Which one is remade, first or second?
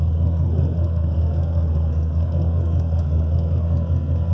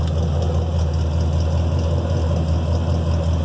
first